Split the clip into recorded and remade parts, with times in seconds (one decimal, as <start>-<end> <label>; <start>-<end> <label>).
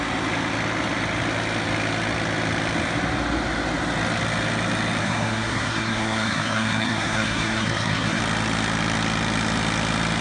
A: 0.0-5.0 recorded; 5.0-8.2 remade; 8.2-10.2 recorded